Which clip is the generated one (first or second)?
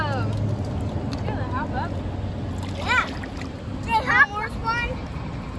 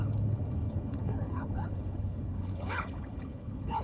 second